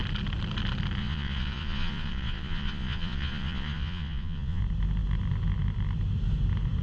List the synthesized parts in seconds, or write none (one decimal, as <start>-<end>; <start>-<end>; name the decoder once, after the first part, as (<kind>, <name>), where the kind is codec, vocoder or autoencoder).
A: 1.0-4.6 (vocoder, Vocos)